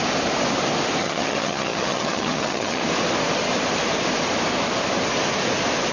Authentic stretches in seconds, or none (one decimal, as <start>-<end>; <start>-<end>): 0.0-1.0; 2.8-5.9